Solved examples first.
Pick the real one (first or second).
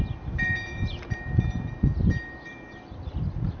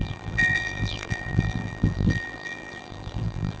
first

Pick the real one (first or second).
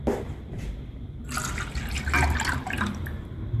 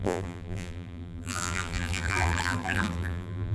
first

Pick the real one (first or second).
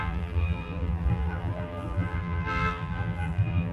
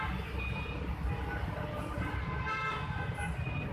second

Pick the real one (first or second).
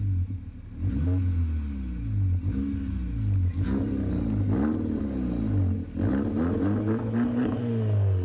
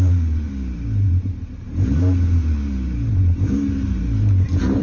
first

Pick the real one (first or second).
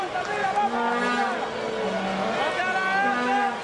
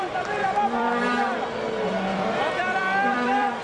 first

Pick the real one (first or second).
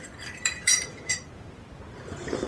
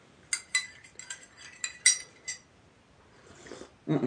second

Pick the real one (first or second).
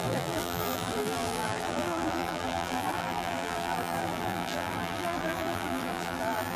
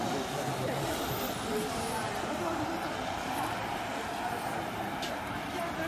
second